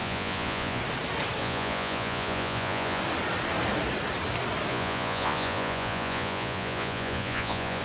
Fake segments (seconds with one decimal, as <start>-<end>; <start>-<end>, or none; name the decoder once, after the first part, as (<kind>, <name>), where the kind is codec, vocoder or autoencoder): 0.0-0.8 (vocoder, Vocos); 1.4-3.0; 4.7-7.8